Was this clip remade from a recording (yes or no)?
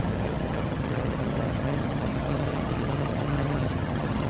yes